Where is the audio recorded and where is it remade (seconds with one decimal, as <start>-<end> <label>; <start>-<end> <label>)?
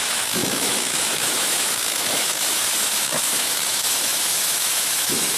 0.0-5.4 remade